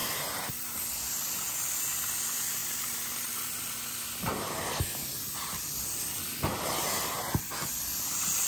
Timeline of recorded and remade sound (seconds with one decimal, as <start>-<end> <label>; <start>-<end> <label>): 0.0-2.6 recorded; 2.6-4.5 remade; 4.5-8.5 recorded